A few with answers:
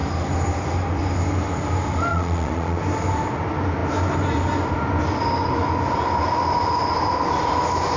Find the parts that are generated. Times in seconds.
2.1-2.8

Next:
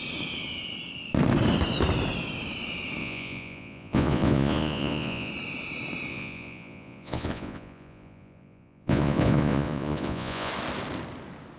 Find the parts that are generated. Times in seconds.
3.0-5.3; 6.1-10.5

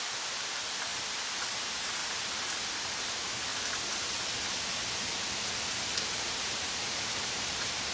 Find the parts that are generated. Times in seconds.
0.0-0.9; 1.4-2.0; 2.6-3.5; 5.9-7.9

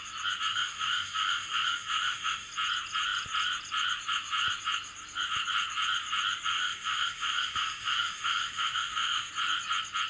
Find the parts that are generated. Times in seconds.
0.5-2.5; 6.5-9.3

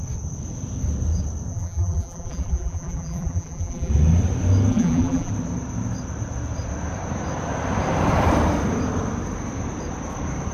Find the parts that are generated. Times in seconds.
1.5-3.9; 4.7-5.3